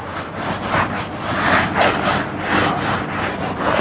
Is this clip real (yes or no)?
yes